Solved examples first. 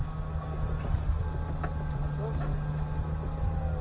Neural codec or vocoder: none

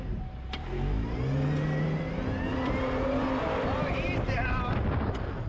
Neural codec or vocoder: none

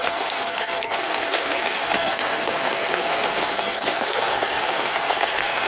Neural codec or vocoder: codec, SNAC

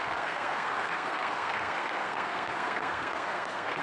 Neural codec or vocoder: codec, SNAC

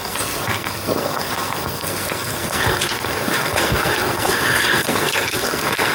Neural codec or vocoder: codec, SNAC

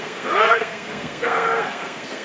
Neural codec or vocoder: codec, SNAC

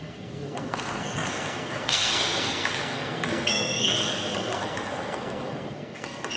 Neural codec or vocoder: codec, SNAC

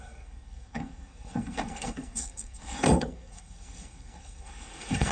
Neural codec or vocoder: codec, SNAC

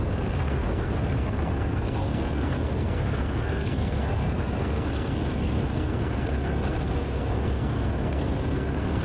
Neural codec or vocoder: codec, SNAC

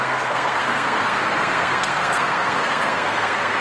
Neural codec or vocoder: codec, SNAC